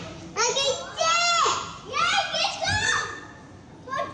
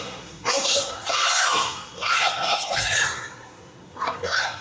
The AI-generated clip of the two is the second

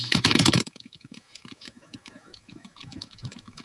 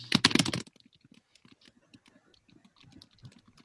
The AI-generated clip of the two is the first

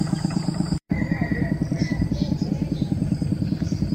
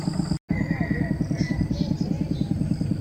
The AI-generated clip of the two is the first